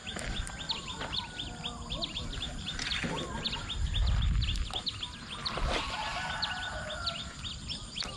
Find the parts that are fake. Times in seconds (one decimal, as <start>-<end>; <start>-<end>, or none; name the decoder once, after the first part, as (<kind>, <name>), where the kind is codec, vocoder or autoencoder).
none